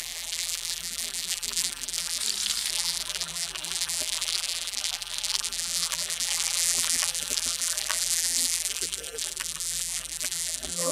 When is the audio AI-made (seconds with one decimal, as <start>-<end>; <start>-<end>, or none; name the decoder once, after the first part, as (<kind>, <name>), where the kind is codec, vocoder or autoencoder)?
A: 0.0-2.2 (vocoder, BigVGAN v2); 2.7-10.9